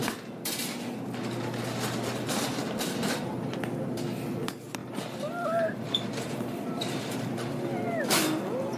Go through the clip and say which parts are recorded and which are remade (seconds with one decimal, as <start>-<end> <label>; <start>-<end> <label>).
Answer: 0.0-4.8 recorded; 4.8-8.8 remade